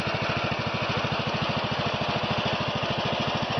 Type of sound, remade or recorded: recorded